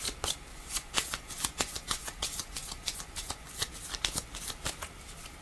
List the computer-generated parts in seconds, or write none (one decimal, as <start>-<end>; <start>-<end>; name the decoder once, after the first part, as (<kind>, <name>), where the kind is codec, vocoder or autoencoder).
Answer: 0.5-3.7 (vocoder, Vocos)